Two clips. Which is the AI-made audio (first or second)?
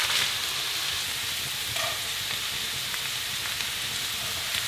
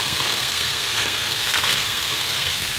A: second